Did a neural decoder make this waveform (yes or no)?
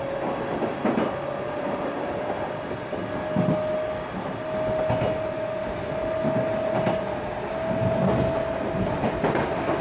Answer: no